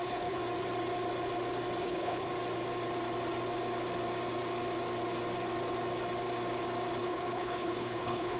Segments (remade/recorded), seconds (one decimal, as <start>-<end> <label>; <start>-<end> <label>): 0.0-0.4 remade; 0.4-1.8 recorded; 1.8-2.3 remade; 2.3-7.0 recorded; 7.0-8.4 remade